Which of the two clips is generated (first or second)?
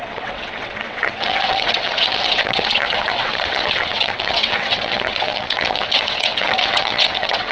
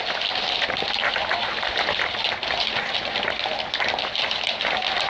first